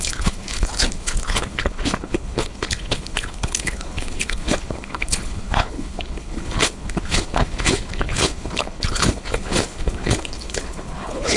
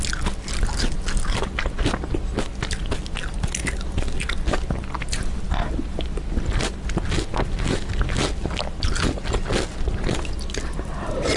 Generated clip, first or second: first